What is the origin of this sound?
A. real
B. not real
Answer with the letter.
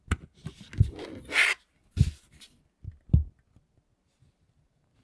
A